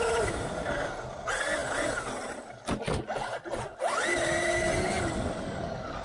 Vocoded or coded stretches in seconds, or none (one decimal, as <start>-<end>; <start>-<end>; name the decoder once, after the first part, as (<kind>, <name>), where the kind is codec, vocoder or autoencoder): none